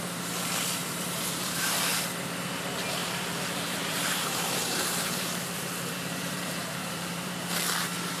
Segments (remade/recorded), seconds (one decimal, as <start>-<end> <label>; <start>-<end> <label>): 0.0-0.8 recorded; 0.8-1.6 remade; 1.6-3.0 recorded; 3.0-7.3 remade; 7.3-8.2 recorded